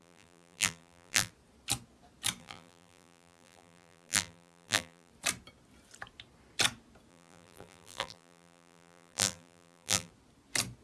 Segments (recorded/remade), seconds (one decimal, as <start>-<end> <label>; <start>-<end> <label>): 0.0-1.3 remade; 1.3-2.4 recorded; 2.4-5.1 remade; 5.1-7.1 recorded; 7.1-10.1 remade; 10.1-10.8 recorded